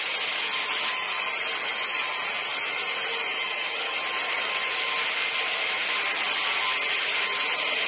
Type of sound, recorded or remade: recorded